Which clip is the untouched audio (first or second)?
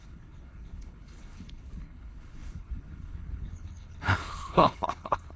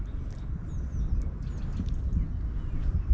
second